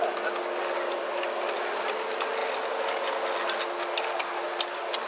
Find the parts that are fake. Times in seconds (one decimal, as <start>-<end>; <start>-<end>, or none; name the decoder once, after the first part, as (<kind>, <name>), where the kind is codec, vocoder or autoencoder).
none

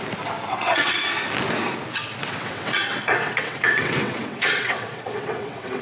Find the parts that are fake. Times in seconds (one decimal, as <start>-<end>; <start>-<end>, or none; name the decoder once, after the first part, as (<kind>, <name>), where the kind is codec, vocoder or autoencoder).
0.5-1.0 (vocoder, WaveNeXt); 2.2-5.8

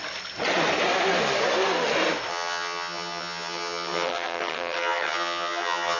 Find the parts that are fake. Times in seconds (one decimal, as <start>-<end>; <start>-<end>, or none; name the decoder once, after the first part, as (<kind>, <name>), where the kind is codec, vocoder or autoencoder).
2.3-6.0 (vocoder, HiFi-GAN)

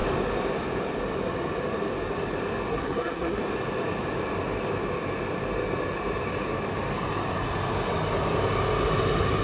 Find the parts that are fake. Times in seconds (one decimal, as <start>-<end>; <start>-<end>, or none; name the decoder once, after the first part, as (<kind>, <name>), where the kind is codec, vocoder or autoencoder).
2.7-3.4 (codec, SNAC)